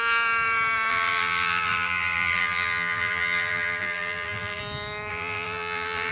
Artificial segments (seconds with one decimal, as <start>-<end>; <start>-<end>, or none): 0.9-4.6; 5.1-6.1